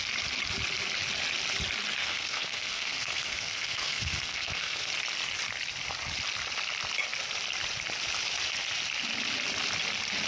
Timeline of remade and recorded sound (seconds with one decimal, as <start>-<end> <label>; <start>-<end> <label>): 0.0-2.0 recorded; 2.0-4.9 remade; 4.9-10.3 recorded